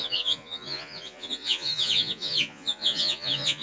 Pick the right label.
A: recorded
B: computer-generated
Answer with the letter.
B